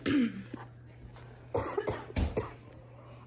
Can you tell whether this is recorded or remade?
recorded